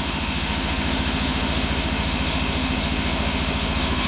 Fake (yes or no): yes